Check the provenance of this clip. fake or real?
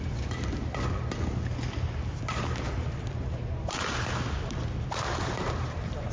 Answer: real